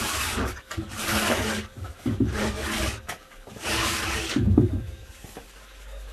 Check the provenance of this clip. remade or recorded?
remade